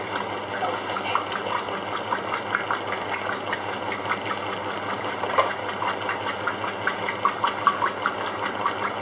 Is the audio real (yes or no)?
yes